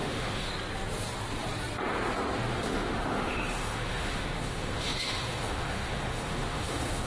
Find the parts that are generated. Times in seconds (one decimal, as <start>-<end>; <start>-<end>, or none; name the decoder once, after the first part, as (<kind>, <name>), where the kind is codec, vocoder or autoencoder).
0.0-0.5 (autoencoder, DAC-VAE); 2.5-7.1